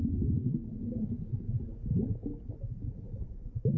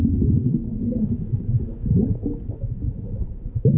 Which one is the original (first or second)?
first